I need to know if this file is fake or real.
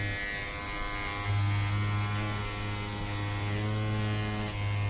real